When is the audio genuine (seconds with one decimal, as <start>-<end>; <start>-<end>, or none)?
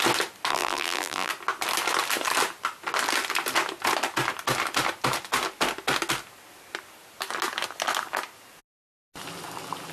0.0-0.5; 1.3-9.9